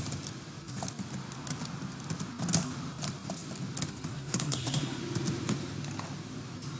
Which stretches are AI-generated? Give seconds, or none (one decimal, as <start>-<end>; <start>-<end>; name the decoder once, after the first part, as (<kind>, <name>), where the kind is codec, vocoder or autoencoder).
4.1-5.0 (codec, SNAC)